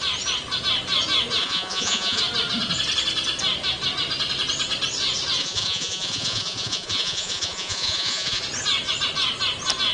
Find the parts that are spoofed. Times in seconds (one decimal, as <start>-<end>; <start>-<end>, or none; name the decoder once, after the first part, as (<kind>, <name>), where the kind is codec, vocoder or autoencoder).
1.4-2.2 (vocoder, Vocos); 5.4-8.4